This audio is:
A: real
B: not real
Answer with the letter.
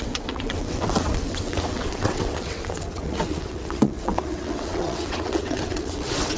B